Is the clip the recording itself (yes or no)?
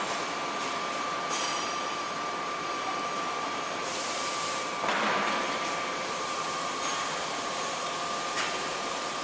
no